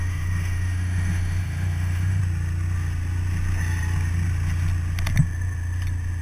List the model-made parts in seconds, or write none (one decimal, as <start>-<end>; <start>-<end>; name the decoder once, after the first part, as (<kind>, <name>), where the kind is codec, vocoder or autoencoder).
0.0-2.2 (autoencoder, DAC-VAE)